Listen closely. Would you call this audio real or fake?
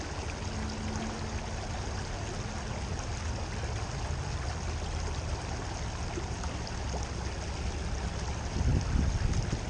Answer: real